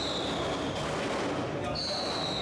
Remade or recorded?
recorded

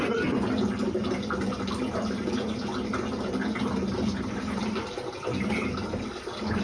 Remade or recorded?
recorded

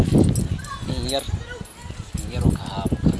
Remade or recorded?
recorded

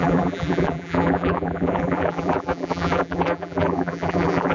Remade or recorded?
remade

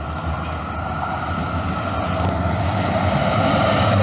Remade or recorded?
recorded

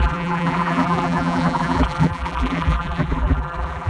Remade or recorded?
remade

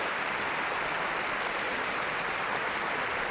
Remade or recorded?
remade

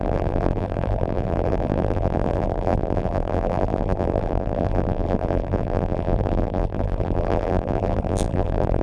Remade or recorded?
remade